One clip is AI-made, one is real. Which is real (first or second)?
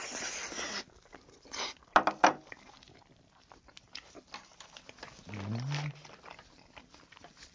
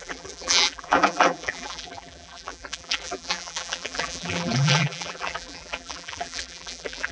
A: first